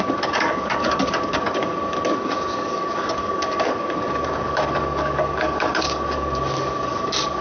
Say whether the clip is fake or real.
fake